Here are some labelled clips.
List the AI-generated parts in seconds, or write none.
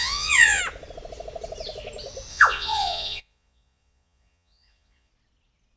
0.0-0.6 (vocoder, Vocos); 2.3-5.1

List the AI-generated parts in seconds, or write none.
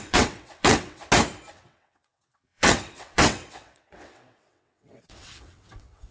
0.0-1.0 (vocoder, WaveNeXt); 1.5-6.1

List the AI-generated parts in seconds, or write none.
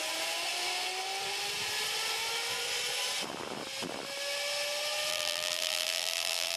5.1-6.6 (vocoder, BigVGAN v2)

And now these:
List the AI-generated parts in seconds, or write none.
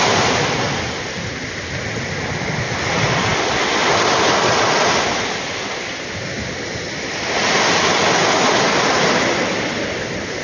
none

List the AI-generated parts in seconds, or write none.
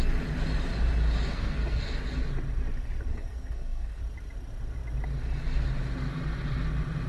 1.3-1.8 (codec, SNAC); 3.1-4.0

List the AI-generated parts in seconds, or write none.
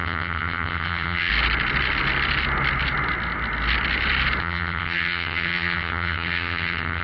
0.0-1.3 (vocoder, HiFi-GAN); 4.4-7.0